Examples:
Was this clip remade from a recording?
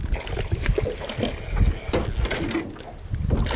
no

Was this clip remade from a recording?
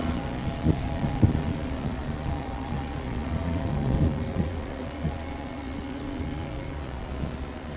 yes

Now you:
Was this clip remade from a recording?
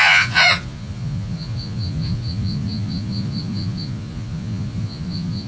yes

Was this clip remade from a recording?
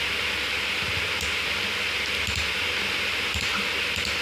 no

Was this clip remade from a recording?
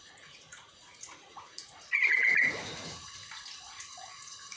yes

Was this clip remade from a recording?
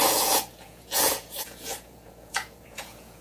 yes